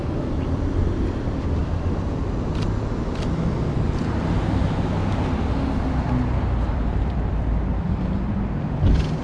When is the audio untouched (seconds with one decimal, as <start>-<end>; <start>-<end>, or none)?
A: 1.6-6.7